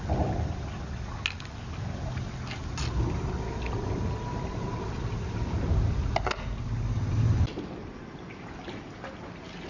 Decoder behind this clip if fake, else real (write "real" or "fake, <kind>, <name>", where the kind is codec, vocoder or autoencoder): real